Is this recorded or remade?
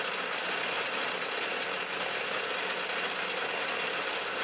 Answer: recorded